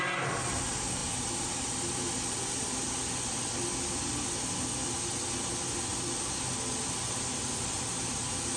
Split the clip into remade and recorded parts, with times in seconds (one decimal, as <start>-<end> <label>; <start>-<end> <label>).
0.0-1.0 recorded; 1.0-3.9 remade; 3.9-5.9 recorded; 5.9-6.5 remade; 6.5-8.6 recorded